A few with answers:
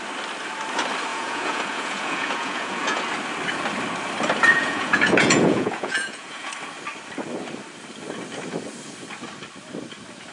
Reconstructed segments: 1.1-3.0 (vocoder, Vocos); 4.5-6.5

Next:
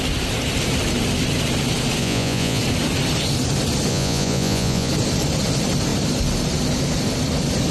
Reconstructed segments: 2.0-2.6 (vocoder, Vocos); 3.9-4.9

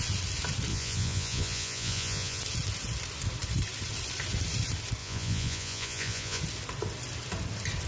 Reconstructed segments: 0.7-2.4 (vocoder, Vocos); 5.0-6.4

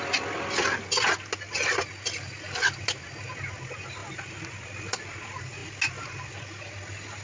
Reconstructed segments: none

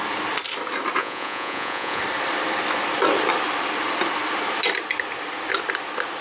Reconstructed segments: 1.0-2.0 (vocoder, Vocos)

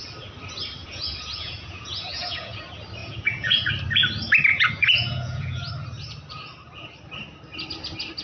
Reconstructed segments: 0.8-2.6 (vocoder, Vocos); 3.0-3.7; 4.5-5.7

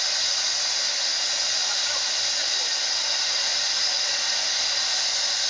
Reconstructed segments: none

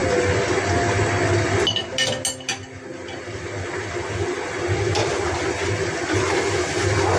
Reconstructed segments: none